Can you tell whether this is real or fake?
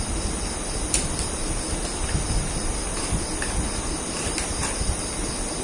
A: real